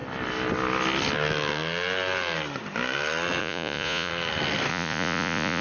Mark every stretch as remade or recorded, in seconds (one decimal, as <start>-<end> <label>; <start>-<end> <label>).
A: 0.0-3.4 recorded; 3.4-4.1 remade; 4.1-4.7 recorded; 4.7-5.6 remade